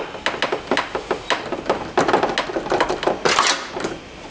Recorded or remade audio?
recorded